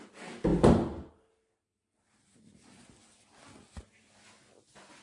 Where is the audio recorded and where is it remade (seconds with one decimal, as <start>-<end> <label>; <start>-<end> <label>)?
0.0-5.0 recorded